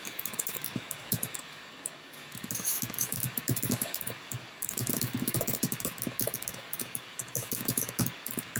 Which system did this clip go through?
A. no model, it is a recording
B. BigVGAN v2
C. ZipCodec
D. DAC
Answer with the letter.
D